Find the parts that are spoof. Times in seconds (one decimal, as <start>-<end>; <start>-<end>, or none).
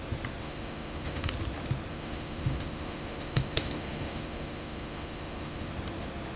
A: 0.4-1.3; 1.9-5.7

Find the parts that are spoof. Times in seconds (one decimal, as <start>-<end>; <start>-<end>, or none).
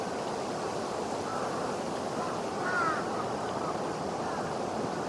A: none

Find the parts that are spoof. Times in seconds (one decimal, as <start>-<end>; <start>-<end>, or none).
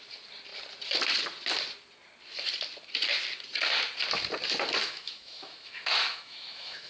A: 4.8-6.9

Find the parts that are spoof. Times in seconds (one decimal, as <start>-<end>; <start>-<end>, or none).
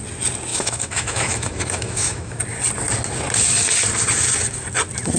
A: 0.5-2.4